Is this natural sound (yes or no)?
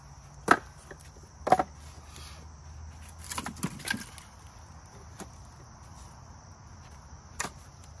yes